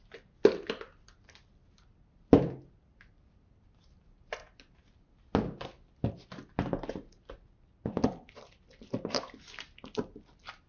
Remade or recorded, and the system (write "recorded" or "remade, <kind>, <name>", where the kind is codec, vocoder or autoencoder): recorded